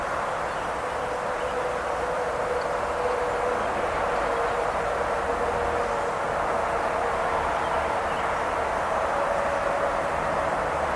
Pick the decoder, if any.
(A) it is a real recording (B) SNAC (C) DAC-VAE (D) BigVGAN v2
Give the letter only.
A